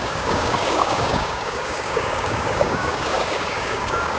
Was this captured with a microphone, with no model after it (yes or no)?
no